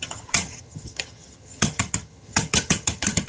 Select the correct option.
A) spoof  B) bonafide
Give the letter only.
A